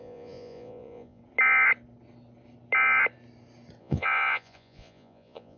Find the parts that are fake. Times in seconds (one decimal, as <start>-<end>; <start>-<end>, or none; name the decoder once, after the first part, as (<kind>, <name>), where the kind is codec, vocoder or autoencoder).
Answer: 0.0-1.2 (vocoder, Vocos); 3.8-5.6